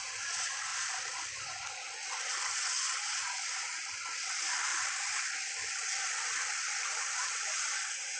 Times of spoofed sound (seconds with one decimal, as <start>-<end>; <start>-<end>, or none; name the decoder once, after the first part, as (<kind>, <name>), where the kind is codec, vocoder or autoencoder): 6.5-8.2 (vocoder, BigVGAN v2)